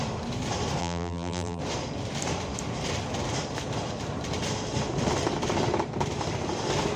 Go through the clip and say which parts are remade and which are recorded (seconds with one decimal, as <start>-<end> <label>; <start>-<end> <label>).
0.0-0.8 recorded; 0.8-1.6 remade; 1.6-7.0 recorded